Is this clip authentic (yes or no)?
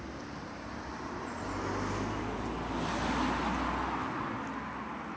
yes